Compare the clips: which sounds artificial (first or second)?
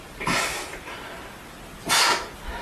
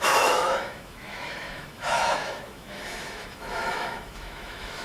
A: second